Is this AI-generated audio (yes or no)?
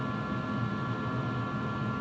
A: no